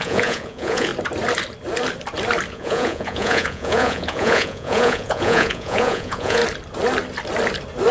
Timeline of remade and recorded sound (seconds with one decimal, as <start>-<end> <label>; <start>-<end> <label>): 0.0-0.9 remade; 0.9-2.5 recorded; 2.5-6.4 remade; 6.4-7.9 recorded